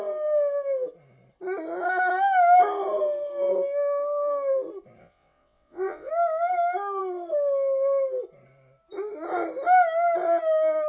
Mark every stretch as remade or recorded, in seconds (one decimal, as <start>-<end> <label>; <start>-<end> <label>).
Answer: 0.0-5.0 recorded; 5.0-6.1 remade; 6.1-10.9 recorded